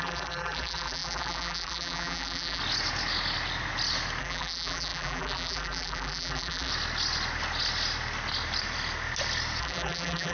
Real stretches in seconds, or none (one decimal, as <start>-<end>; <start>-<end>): 2.6-4.2; 6.7-9.6